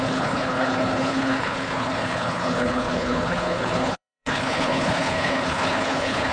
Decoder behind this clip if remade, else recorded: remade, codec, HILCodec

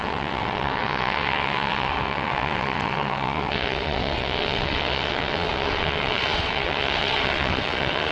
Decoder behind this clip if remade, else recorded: remade, vocoder, WaveNeXt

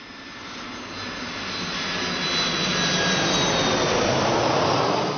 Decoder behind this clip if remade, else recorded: recorded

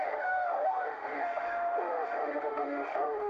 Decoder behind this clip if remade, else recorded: remade, autoencoder, DAC-VAE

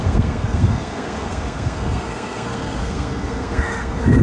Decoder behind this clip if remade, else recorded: remade, codec, SNAC